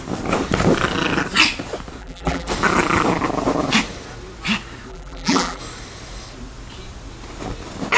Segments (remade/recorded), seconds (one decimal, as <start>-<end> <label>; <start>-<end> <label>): 0.0-2.0 recorded; 2.0-2.5 remade; 2.5-4.9 recorded; 4.9-5.6 remade; 5.6-8.0 recorded